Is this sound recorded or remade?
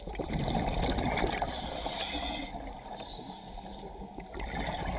recorded